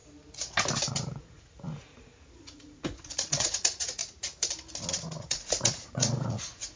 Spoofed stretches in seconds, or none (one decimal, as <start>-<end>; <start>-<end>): 0.9-4.0; 4.9-6.8